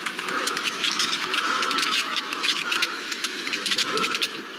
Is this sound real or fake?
fake